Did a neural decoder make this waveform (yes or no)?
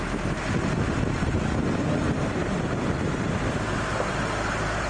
no